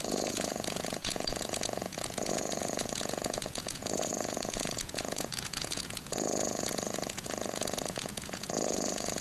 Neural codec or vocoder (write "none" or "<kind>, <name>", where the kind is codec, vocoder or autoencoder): vocoder, Vocos